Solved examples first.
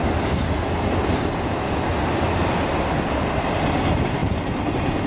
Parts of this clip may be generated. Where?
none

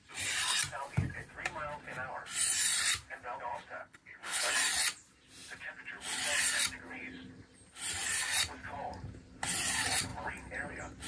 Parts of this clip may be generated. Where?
3.8-4.5